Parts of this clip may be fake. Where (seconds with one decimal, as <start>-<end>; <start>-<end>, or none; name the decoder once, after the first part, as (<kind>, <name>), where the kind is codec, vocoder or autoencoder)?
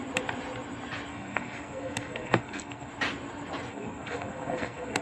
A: 1.1-2.9 (codec, SNAC); 3.7-5.0